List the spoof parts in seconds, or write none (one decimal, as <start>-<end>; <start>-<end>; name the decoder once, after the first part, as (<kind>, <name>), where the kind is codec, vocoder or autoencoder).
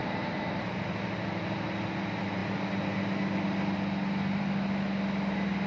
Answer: 0.0-0.9 (vocoder, BigVGAN v2)